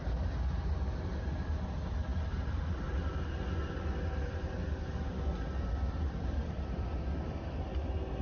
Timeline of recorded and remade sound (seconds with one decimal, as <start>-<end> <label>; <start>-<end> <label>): 0.0-8.2 recorded